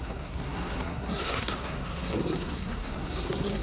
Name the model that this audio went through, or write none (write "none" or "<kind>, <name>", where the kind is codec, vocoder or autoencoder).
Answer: codec, SNAC